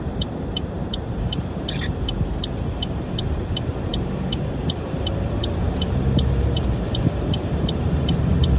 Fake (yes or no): yes